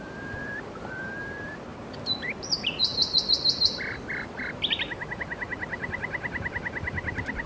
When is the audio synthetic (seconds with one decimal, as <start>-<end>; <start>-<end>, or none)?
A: 0.0-1.7; 2.5-7.5